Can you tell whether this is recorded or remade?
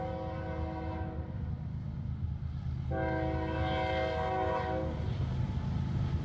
recorded